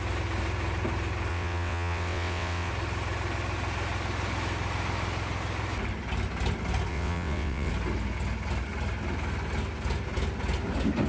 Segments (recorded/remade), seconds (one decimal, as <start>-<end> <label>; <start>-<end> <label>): 0.0-1.3 recorded; 1.3-2.7 remade; 2.7-6.9 recorded; 6.9-7.7 remade; 7.7-11.1 recorded